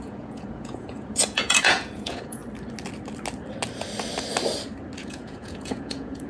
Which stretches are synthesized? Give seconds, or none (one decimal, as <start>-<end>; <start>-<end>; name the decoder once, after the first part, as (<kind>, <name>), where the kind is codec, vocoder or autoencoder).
0.0-2.4 (vocoder, Vocos); 5.0-6.3